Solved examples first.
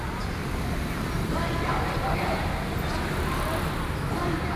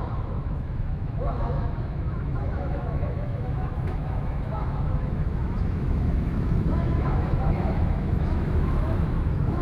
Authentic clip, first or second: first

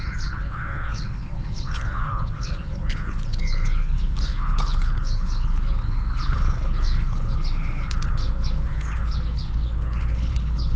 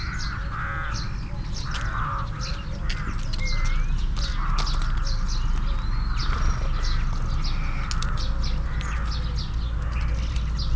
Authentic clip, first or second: second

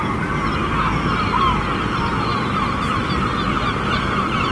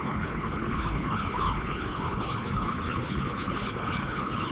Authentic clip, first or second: first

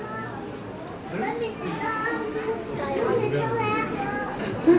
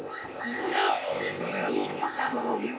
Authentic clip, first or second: first